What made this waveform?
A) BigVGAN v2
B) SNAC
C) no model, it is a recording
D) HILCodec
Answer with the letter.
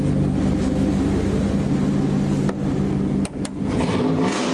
C